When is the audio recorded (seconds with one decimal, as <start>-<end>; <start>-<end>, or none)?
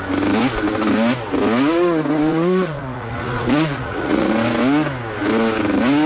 0.0-2.3; 4.3-6.1